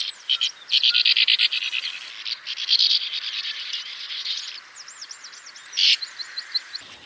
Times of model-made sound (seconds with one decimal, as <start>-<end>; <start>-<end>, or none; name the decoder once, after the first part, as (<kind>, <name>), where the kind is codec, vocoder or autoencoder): 3.4-4.5 (vocoder, Vocos)